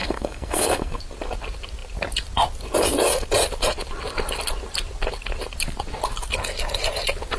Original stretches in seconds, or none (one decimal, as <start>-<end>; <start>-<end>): 1.0-7.4